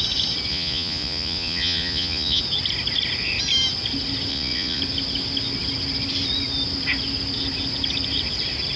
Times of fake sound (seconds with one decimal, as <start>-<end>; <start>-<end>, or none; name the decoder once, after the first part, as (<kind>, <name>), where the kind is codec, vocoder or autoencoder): 0.5-2.4 (vocoder, Vocos); 4.3-4.8